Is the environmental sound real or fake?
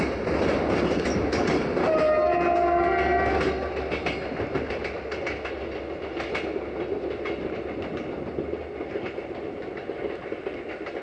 real